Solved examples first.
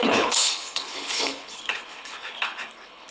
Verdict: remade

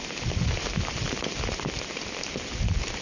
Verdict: recorded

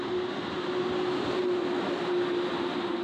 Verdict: recorded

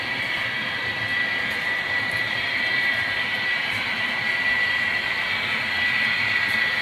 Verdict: recorded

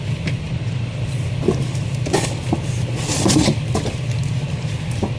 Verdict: recorded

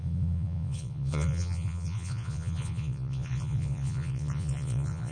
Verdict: remade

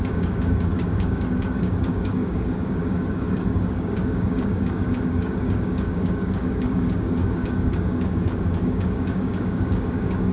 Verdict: remade